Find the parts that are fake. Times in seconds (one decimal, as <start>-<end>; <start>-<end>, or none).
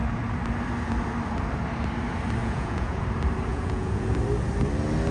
2.4-3.0; 3.5-4.1